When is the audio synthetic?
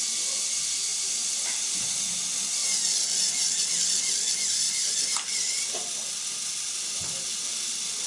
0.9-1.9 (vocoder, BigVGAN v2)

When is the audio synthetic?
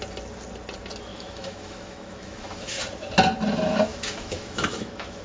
1.1-2.8 (autoencoder, DAC-VAE); 3.9-5.2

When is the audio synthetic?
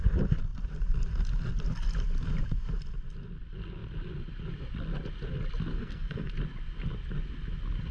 5.7-6.3 (codec, SNAC)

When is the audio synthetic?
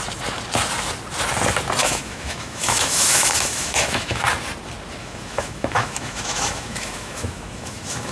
1.8-4.2 (autoencoder, DAC-VAE); 5.0-8.1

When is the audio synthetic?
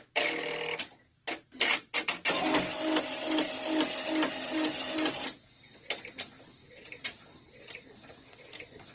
6.6-7.5 (vocoder, BigVGAN v2)